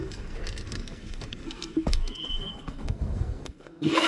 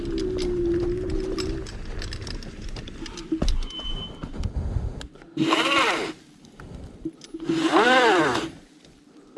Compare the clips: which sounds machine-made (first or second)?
first